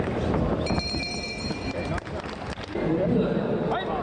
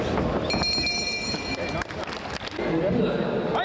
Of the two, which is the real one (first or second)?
second